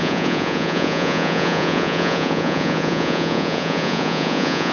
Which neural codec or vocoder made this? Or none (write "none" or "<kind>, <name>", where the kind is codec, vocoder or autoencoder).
vocoder, Vocos